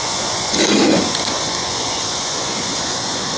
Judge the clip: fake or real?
fake